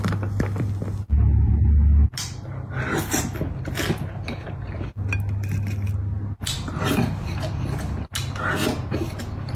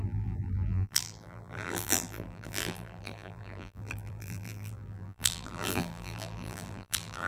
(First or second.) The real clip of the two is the first